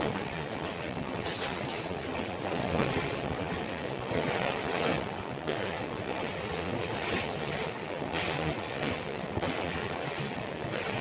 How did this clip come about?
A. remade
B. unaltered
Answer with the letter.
A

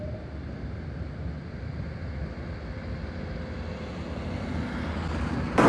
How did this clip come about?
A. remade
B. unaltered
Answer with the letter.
B